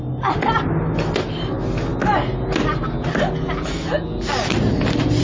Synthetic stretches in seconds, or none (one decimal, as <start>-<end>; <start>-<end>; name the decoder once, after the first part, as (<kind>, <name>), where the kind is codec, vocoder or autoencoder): none